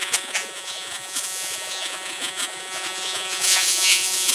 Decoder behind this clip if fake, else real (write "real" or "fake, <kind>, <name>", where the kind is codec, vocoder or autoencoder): fake, vocoder, Vocos